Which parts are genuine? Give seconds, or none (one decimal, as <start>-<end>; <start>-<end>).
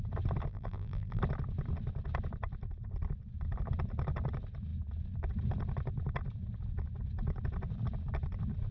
0.0-0.5; 1.2-8.7